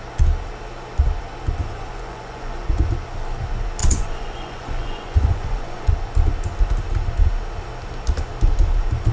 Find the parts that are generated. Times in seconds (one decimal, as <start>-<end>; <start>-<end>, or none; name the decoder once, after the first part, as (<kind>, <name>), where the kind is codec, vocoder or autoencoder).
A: 1.6-2.9 (vocoder, Vocos); 3.8-5.9